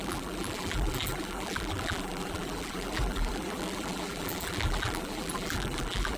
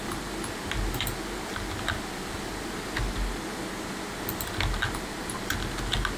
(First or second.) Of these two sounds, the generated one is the first